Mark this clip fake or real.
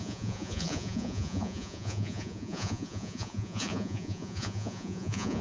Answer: fake